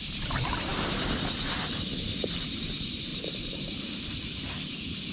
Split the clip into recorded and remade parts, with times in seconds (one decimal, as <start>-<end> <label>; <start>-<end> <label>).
0.0-3.1 recorded; 3.1-3.8 remade; 3.8-5.1 recorded